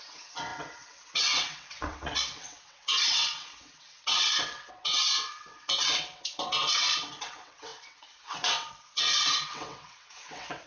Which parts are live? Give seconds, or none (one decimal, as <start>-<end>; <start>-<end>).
none